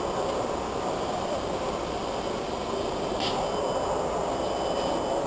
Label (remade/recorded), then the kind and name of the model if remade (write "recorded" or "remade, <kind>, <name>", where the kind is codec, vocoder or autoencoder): recorded